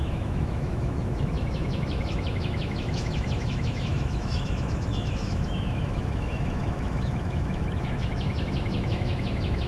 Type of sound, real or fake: fake